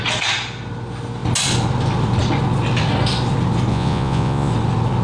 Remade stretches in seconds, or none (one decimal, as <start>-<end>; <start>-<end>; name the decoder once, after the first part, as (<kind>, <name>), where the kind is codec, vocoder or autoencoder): 3.7-4.5 (vocoder, Vocos)